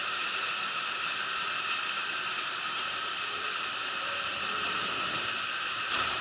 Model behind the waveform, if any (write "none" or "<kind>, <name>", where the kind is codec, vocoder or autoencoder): vocoder, BigVGAN v2